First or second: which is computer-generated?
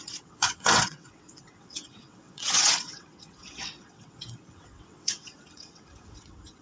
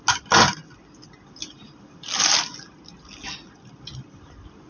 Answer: first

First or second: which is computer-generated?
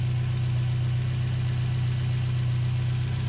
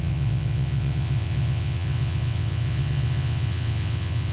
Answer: second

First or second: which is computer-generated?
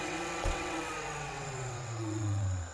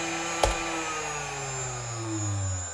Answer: first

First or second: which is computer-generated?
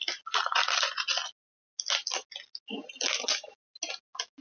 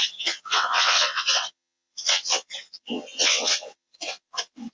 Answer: second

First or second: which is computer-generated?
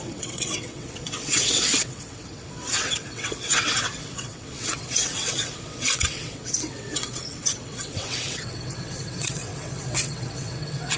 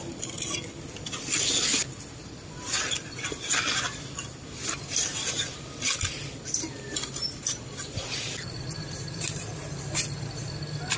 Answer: first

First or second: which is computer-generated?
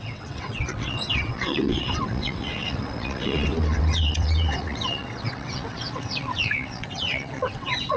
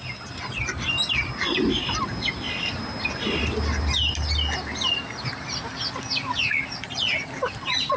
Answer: first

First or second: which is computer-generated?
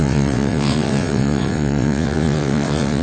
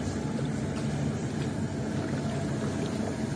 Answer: first